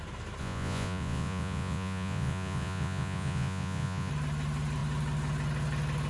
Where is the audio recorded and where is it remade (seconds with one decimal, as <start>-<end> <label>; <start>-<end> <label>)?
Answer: 0.0-0.4 recorded; 0.4-4.1 remade; 4.1-6.1 recorded